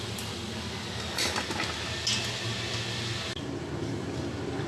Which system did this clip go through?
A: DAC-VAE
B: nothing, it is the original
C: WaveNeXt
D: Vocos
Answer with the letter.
B